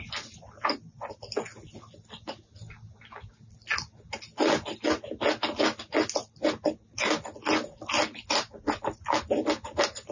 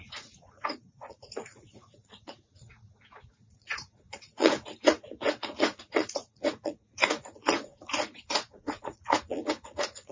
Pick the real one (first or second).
first